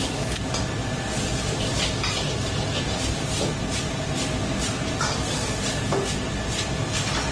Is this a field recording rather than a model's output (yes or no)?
yes